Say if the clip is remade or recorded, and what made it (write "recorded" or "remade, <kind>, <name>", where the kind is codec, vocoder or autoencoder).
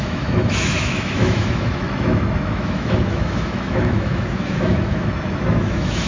remade, autoencoder, DAC-VAE